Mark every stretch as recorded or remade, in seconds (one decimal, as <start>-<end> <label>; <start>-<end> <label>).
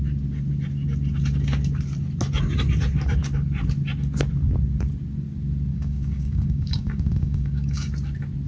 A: 0.0-5.7 recorded; 5.7-7.9 remade; 7.9-8.5 recorded